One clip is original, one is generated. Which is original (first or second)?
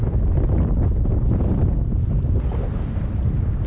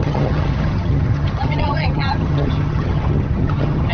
first